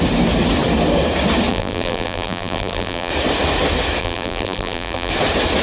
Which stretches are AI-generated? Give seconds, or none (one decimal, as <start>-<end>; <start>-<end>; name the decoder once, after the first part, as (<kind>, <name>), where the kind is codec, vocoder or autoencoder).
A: 1.5-3.1 (vocoder, BigVGAN v2); 4.0-5.1